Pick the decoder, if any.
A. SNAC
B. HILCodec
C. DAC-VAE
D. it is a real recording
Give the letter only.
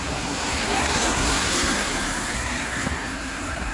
A